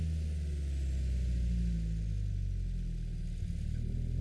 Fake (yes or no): no